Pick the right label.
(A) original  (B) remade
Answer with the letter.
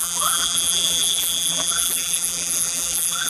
B